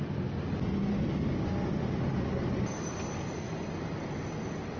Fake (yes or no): no